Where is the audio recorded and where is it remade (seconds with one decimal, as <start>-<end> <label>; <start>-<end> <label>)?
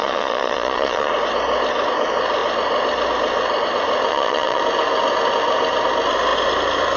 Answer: 0.0-1.1 remade; 1.1-4.1 recorded; 4.1-4.6 remade; 4.6-7.0 recorded